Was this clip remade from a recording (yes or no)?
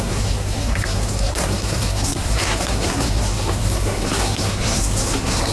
yes